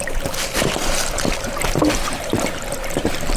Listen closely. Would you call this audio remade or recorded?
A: remade